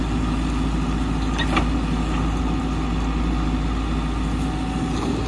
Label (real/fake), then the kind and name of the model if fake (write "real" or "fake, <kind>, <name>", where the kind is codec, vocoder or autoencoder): real